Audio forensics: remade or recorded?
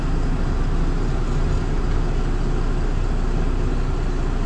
recorded